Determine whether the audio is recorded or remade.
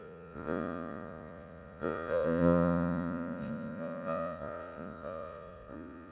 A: remade